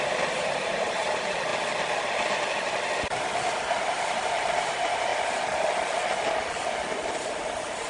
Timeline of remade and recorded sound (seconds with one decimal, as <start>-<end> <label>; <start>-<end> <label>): 0.0-1.5 remade; 1.5-3.9 recorded; 3.9-5.1 remade; 5.1-7.4 recorded; 7.4-7.9 remade